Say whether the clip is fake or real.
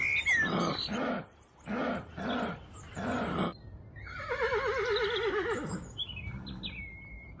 real